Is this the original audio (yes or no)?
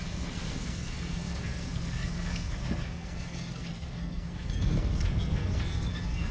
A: no